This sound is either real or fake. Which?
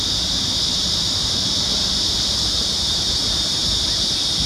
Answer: fake